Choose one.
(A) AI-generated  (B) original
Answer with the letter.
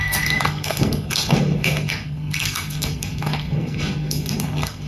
A